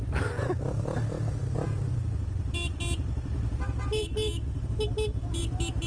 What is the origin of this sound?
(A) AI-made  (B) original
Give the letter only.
B